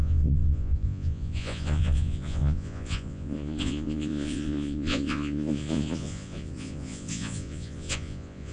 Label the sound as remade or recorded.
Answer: remade